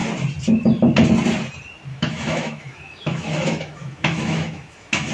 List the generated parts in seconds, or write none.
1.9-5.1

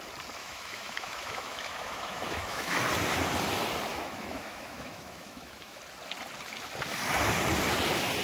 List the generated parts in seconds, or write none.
0.4-2.8; 3.9-5.8

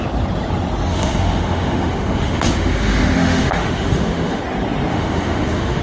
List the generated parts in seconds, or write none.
0.9-4.4; 4.9-5.8

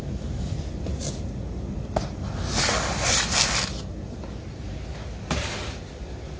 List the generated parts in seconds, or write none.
none

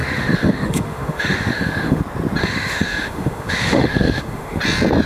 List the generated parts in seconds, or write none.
0.0-2.0; 2.4-4.6

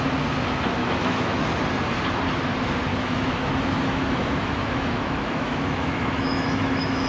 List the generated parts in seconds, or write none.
0.8-1.4; 2.9-7.1